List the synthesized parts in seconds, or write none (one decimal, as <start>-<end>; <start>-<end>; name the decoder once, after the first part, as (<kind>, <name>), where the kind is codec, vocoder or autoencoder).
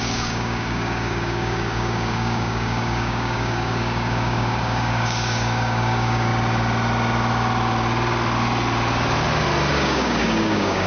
0.0-6.3 (codec, DAC); 9.7-10.9